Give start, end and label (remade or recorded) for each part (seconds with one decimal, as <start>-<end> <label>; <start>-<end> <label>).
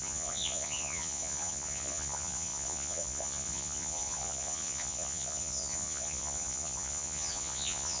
0.0-8.0 remade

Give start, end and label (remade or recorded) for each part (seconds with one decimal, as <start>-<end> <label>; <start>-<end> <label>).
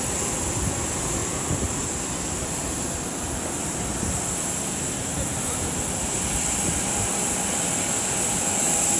0.0-9.0 recorded